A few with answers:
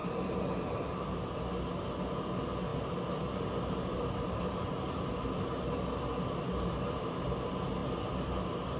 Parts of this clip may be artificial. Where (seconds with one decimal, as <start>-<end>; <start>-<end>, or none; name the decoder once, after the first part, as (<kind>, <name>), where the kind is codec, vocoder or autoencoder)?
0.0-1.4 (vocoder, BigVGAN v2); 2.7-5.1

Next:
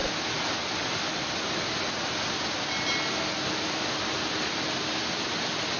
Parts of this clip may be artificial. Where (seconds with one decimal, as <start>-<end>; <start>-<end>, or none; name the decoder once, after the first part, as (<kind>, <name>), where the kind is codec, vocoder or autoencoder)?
none

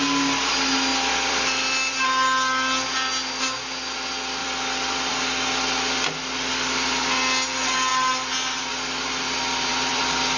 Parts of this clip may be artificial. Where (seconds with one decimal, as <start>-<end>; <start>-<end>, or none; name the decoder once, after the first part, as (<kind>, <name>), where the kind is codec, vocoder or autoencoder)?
0.9-2.0 (vocoder, BigVGAN v2); 4.4-5.1; 9.7-10.4

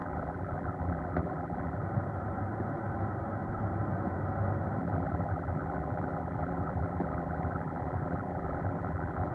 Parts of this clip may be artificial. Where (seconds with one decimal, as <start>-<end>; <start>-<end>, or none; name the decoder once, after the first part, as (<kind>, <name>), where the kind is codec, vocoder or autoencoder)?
0.0-1.8 (vocoder, BigVGAN v2); 4.8-9.3

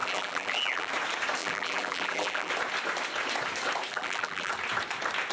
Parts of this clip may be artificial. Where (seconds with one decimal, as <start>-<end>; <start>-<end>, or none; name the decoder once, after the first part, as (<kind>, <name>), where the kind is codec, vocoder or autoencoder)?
0.0-0.9 (vocoder, BigVGAN v2); 1.4-2.5; 3.9-4.5